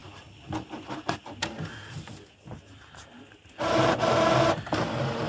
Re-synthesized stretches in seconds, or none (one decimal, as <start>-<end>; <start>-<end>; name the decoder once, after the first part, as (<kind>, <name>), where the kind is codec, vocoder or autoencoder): none